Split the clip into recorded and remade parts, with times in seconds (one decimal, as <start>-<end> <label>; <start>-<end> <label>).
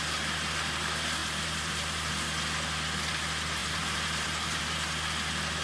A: 0.0-1.2 recorded; 1.2-2.1 remade; 2.1-3.6 recorded; 3.6-4.6 remade; 4.6-5.6 recorded